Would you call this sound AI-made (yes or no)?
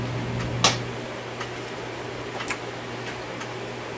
no